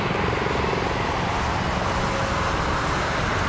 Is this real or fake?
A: real